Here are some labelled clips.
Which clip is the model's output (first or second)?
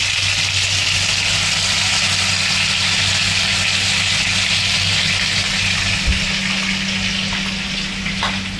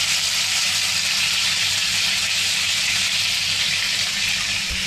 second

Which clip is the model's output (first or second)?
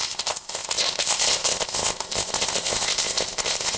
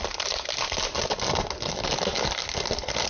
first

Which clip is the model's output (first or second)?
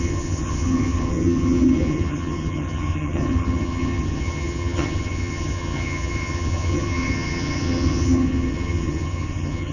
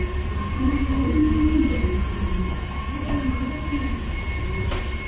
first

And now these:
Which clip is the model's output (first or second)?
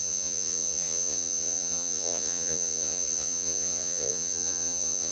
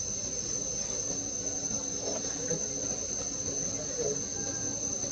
first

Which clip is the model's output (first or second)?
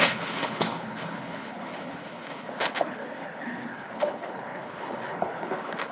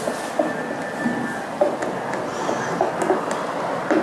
first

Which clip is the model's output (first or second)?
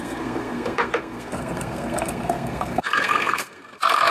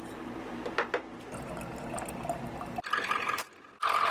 first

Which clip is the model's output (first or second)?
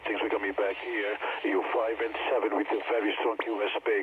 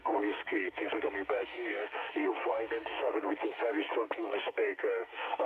second